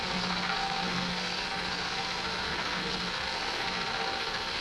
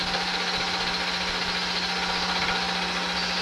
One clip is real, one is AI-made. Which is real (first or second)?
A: second